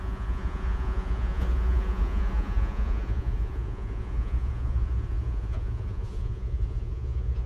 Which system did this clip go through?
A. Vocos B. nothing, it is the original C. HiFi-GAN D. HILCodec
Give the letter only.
A